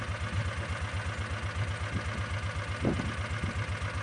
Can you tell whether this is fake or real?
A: real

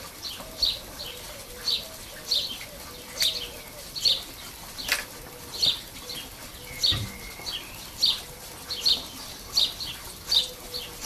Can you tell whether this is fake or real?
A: real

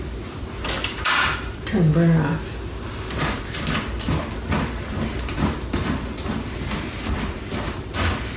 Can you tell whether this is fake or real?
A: real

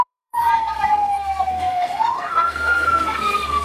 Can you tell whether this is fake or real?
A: fake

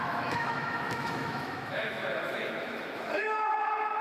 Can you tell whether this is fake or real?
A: fake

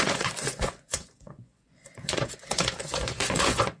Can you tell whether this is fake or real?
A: fake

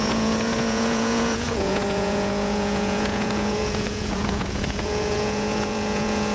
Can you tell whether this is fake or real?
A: fake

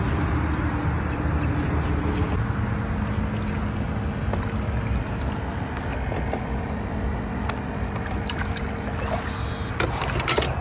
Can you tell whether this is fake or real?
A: real